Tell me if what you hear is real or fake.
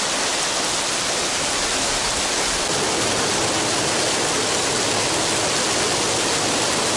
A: real